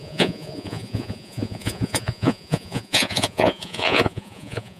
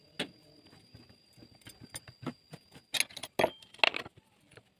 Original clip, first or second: second